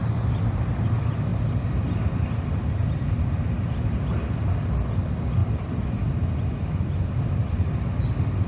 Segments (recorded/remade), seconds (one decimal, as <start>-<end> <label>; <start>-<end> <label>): 0.0-0.7 remade; 0.7-8.5 recorded

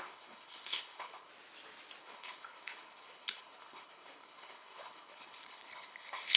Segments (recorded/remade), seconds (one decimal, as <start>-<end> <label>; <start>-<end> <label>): 0.0-1.3 remade; 1.3-2.0 recorded; 2.0-6.4 remade

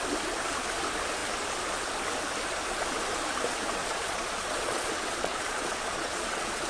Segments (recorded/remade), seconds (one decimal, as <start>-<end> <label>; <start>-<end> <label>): 0.0-3.8 recorded; 3.8-6.7 remade

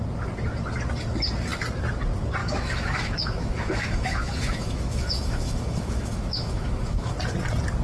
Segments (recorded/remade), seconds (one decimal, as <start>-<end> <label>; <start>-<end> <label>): 0.0-2.4 recorded; 2.4-7.1 remade; 7.1-7.8 recorded

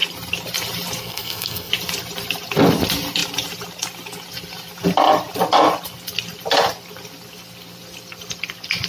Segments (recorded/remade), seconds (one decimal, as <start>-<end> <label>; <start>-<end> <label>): 0.0-1.0 recorded; 1.0-1.7 remade; 1.7-8.9 recorded

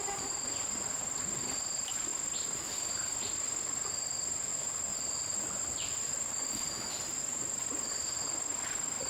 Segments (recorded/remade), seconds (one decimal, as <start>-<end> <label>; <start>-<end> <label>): 0.0-4.5 recorded; 4.5-7.2 remade; 7.2-9.1 recorded

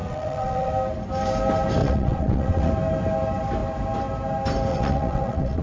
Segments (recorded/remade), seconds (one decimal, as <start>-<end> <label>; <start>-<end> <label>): 0.0-0.7 remade; 0.7-1.8 recorded; 1.8-2.7 remade; 2.7-4.7 recorded; 4.7-5.6 remade